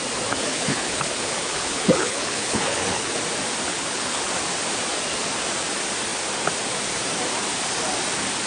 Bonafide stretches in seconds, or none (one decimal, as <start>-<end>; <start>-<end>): 0.0-0.5; 3.1-3.7; 4.3-8.5